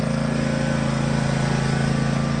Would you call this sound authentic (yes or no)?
yes